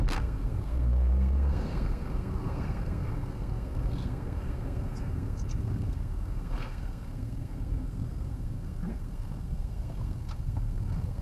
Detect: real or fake fake